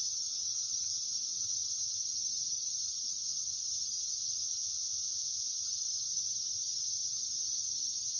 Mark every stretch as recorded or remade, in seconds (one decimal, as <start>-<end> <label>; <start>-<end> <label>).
0.0-4.6 remade; 4.6-5.5 recorded; 5.5-8.2 remade